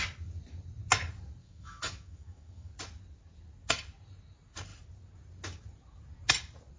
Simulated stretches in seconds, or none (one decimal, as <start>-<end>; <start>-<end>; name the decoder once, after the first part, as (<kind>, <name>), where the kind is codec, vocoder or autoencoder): 1.4-2.7 (autoencoder, DAC-VAE)